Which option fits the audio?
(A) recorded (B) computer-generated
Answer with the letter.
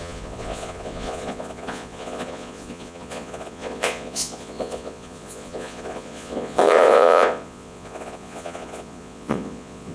B